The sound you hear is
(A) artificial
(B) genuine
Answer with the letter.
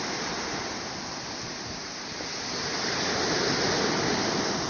B